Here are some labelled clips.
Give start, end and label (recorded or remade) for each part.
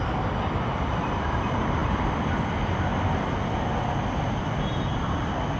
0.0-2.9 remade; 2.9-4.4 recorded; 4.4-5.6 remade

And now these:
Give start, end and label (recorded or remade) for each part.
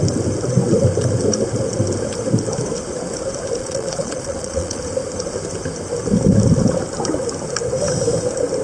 0.0-3.6 recorded; 3.6-4.8 remade; 4.8-8.6 recorded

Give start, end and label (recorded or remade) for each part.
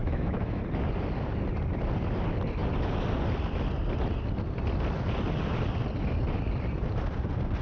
0.0-0.6 remade; 0.6-7.6 recorded